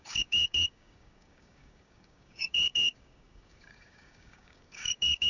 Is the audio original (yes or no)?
no